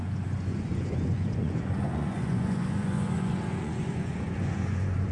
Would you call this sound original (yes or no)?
no